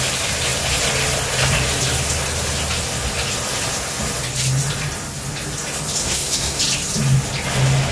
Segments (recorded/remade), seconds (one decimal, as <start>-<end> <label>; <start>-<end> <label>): 0.0-6.0 recorded; 6.0-6.6 remade; 6.6-7.9 recorded